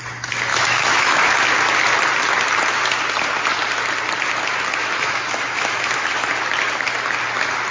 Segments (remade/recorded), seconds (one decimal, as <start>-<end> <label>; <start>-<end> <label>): 0.0-0.5 recorded; 0.5-1.3 remade; 1.3-4.8 recorded; 4.8-6.3 remade; 6.3-7.7 recorded